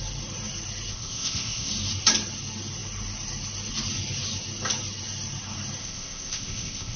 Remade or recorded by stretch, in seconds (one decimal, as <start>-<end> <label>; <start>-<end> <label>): 0.0-0.9 recorded; 0.9-1.7 remade; 1.7-5.8 recorded; 5.8-7.0 remade

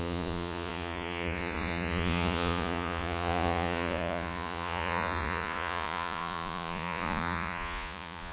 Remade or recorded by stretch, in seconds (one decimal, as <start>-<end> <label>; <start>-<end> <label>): 0.0-8.3 remade

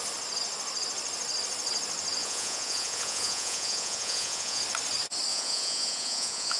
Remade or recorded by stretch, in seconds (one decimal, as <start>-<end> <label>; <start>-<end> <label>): 0.0-2.2 recorded; 2.2-4.6 remade; 4.6-5.3 recorded; 5.3-6.6 remade

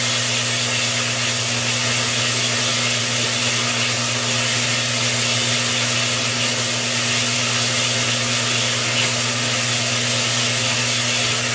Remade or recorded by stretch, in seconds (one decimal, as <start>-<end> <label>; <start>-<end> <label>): 0.0-11.5 recorded